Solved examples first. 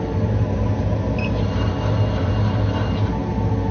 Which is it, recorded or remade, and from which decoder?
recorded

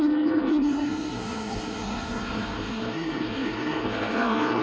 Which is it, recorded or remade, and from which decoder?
remade, codec, SNAC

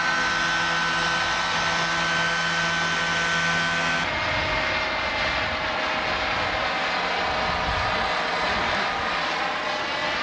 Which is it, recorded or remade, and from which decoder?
recorded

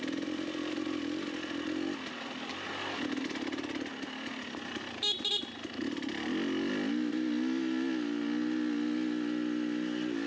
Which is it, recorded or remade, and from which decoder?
recorded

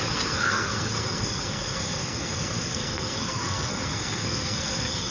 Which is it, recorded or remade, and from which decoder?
remade, codec, SNAC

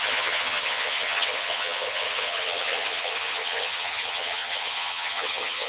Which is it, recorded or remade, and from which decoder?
remade, vocoder, HiFi-GAN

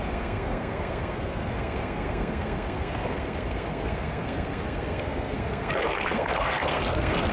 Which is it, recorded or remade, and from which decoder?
remade, codec, SNAC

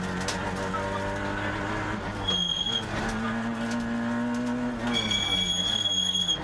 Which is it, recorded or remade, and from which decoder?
recorded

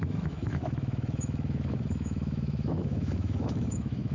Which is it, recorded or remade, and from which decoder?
remade, autoencoder, DAC-VAE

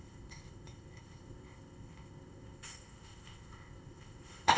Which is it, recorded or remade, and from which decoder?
remade, codec, ZipCodec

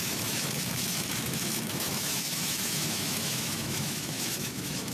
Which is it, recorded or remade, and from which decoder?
remade, autoencoder, DAC-VAE